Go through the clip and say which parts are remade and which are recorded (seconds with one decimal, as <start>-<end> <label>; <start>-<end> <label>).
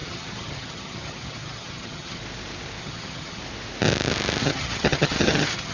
0.0-2.2 remade; 2.2-2.8 recorded; 2.8-3.4 remade; 3.4-4.4 recorded; 4.4-5.7 remade